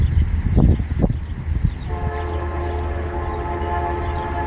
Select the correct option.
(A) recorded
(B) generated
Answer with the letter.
A